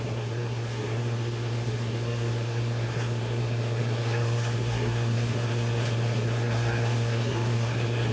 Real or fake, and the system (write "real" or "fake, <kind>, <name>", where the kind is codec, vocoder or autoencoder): fake, codec, SNAC